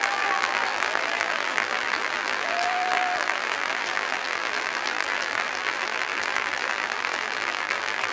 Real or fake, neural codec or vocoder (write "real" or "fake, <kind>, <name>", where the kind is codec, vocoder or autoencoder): fake, vocoder, BigVGAN v2